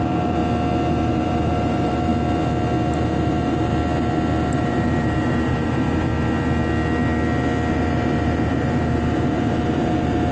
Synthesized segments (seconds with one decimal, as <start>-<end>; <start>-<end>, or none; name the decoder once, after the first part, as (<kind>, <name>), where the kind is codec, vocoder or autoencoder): 0.0-0.4 (vocoder, BigVGAN v2); 0.9-2.1; 2.9-3.7; 4.4-6.1; 7.7-10.3